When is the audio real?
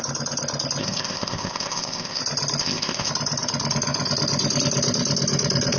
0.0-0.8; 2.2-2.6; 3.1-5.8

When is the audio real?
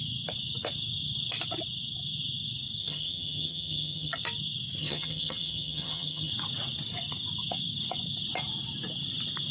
0.0-2.8; 4.2-4.8; 6.3-9.5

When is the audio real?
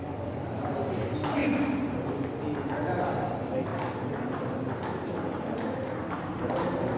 0.0-7.0